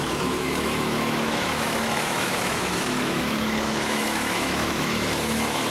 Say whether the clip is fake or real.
fake